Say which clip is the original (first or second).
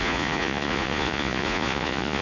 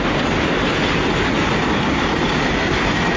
second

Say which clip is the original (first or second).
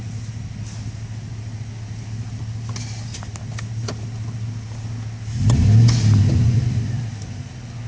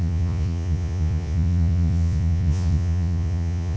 first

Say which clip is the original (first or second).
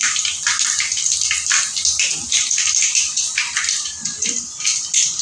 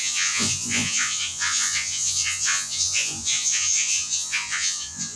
first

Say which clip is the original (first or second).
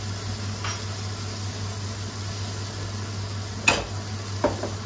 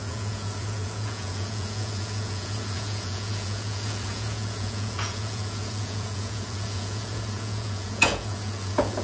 first